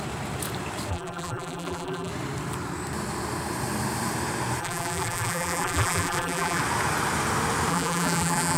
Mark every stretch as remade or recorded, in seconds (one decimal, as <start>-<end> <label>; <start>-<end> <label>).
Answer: 0.0-0.9 recorded; 0.9-2.1 remade; 2.1-4.6 recorded; 4.6-6.6 remade; 6.6-7.7 recorded; 7.7-8.6 remade